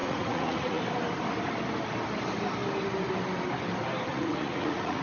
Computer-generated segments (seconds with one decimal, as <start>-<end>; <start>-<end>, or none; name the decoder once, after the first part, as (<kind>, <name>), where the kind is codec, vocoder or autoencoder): 0.0-0.8 (vocoder, Vocos); 4.1-5.0